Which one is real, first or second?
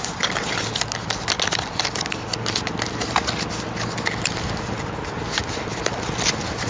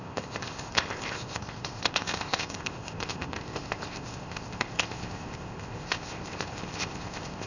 first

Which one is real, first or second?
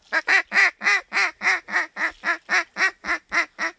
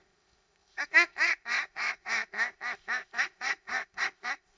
first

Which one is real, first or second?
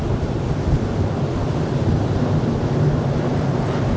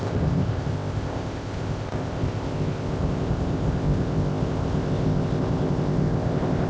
first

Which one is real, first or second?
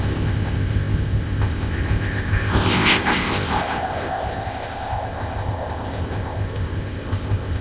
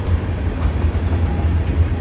second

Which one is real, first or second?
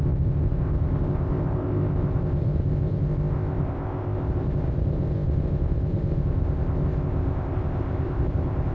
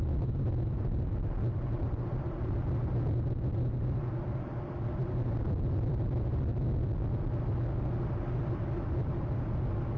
second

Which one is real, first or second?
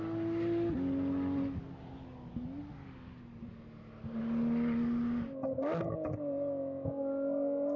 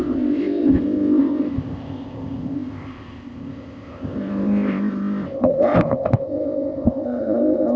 first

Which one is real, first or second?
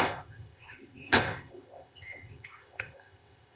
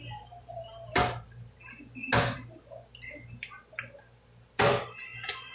second